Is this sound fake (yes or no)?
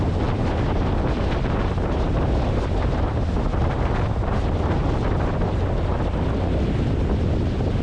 no